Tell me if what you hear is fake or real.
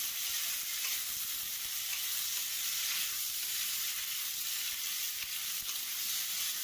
real